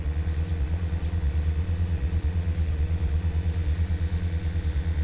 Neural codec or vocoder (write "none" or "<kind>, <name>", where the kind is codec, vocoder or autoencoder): vocoder, Vocos